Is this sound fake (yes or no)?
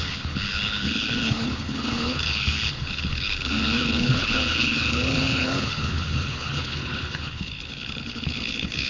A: yes